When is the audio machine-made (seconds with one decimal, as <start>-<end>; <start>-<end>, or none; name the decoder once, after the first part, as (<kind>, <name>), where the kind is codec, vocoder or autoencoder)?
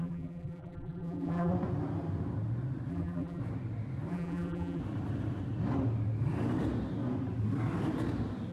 0.0-1.5 (vocoder, BigVGAN v2); 2.9-3.4; 4.1-4.8